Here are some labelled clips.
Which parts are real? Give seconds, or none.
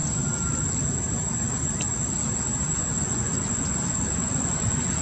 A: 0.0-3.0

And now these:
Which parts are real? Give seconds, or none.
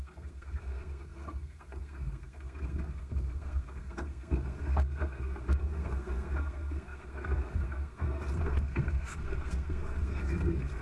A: none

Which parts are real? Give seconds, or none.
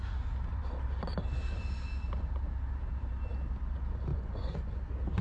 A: 0.0-4.1; 4.8-5.2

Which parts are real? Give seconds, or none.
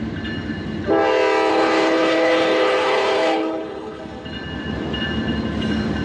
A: 0.0-1.5; 4.0-6.0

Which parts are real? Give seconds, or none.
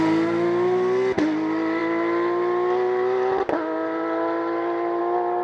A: 0.0-5.4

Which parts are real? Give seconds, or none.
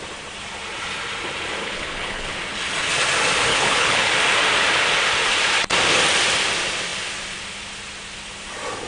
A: 0.0-1.6; 2.3-3.5; 4.1-8.9